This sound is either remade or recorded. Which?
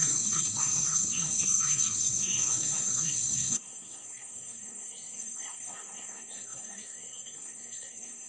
remade